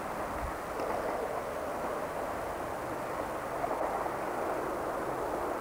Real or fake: real